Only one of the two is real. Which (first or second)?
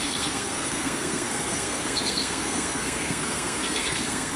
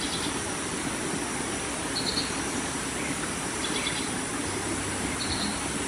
second